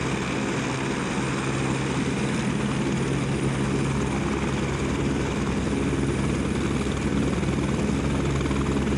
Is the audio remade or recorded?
recorded